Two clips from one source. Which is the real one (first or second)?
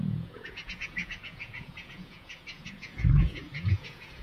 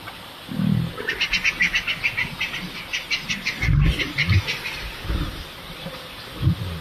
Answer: second